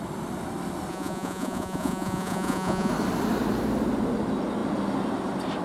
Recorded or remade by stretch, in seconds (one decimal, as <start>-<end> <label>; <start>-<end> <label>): 0.0-0.9 recorded; 0.9-2.9 remade; 2.9-5.6 recorded

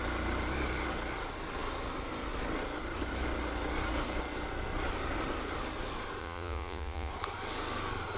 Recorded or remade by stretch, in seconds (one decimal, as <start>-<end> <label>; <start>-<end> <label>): 0.0-6.2 recorded; 6.2-7.1 remade; 7.1-8.2 recorded